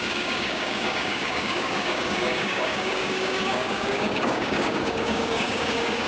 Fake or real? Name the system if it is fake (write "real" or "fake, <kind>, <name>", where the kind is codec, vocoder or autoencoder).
fake, codec, DAC